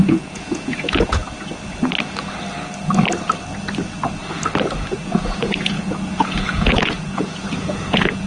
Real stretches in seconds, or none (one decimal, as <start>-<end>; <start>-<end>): 1.2-4.9